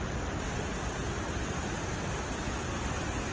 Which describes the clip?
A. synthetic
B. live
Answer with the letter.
B